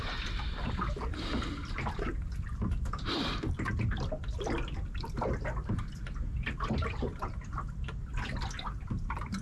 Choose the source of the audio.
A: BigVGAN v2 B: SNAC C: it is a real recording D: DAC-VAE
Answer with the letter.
C